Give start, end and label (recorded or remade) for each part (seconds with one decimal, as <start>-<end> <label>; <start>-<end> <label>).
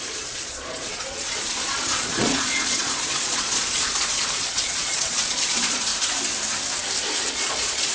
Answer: 0.0-5.9 remade; 5.9-7.3 recorded; 7.3-7.9 remade